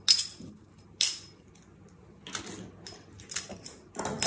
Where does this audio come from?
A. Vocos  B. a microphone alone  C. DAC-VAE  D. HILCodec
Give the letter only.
B